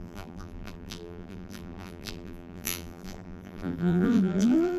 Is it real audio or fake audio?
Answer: fake